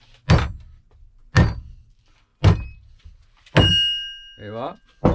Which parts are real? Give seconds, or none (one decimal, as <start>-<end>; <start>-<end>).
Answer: 0.0-5.1